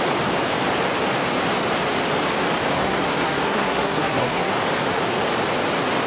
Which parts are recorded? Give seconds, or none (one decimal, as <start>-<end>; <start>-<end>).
0.0-2.7; 4.5-6.1